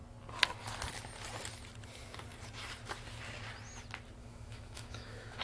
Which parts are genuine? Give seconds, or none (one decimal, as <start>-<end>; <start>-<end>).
0.0-4.2